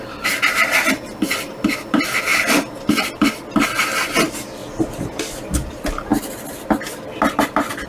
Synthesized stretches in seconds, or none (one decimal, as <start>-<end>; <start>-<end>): 0.0-2.3; 3.0-6.1; 7.0-7.9